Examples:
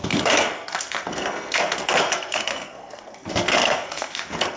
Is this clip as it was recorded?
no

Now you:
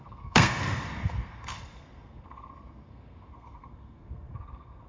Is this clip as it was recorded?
no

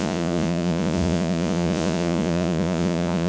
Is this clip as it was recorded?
no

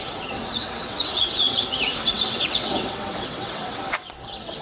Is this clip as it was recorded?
no